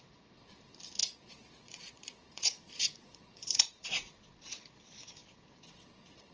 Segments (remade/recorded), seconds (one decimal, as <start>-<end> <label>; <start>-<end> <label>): 0.0-1.0 recorded; 1.0-4.8 remade; 4.8-6.3 recorded